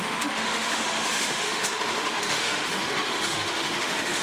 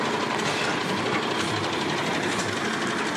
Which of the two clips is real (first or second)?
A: second